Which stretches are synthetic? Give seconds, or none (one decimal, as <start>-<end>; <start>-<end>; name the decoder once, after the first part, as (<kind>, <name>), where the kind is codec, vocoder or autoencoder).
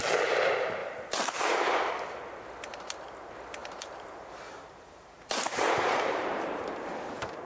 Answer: 0.8-1.9 (vocoder, BigVGAN v2); 3.6-6.9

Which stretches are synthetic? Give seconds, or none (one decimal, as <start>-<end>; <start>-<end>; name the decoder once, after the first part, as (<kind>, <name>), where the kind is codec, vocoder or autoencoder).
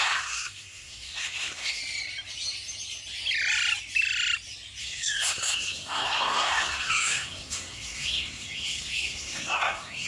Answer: 0.0-1.8 (codec, SNAC); 4.8-10.1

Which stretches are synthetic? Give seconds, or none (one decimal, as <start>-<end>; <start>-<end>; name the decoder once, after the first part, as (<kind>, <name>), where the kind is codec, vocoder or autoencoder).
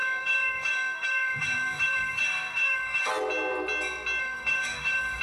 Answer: 0.0-3.1 (autoencoder, DAC-VAE); 4.2-5.2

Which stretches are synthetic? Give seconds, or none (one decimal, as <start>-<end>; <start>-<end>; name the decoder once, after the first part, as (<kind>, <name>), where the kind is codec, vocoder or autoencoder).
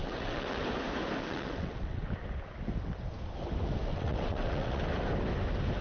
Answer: 0.0-0.6 (vocoder, WaveNeXt); 1.2-2.0; 3.9-4.8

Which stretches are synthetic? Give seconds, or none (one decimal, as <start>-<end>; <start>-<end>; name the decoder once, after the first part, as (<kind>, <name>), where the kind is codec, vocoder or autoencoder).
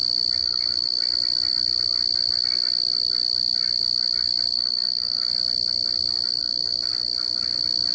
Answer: 0.4-1.0 (codec, DAC); 4.5-5.3; 6.4-6.9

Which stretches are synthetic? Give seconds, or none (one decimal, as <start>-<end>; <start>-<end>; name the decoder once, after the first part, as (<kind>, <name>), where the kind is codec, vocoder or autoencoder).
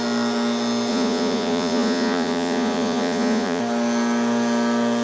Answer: 0.9-3.6 (vocoder, Vocos)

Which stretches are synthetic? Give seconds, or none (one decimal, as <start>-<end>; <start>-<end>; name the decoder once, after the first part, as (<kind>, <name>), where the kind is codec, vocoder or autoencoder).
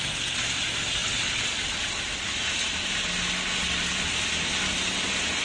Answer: none